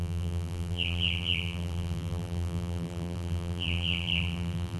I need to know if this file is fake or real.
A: fake